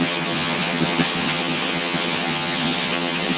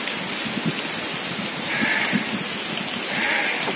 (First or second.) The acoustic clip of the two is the second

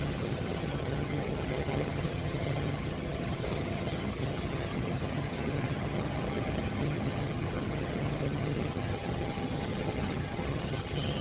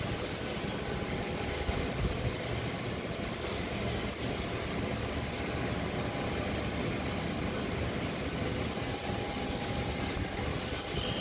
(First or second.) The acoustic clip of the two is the second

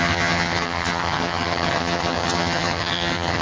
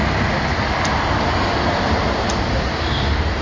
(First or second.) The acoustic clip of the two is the second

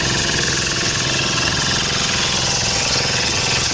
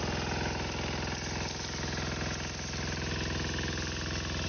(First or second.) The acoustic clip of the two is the second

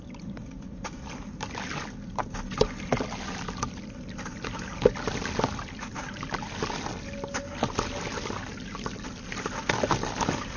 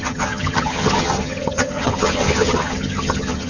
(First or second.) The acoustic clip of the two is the first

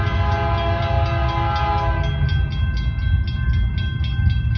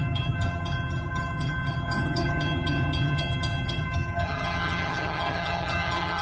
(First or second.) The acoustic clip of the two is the first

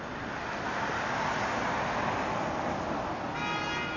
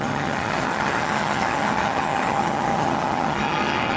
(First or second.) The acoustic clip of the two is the first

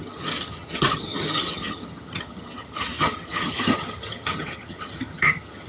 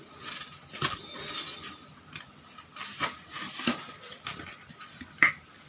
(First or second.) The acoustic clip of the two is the second